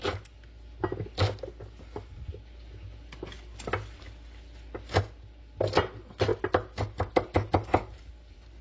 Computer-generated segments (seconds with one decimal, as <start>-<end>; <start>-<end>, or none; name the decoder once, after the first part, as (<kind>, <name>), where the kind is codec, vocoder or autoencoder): none